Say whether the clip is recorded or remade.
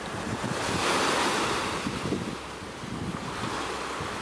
recorded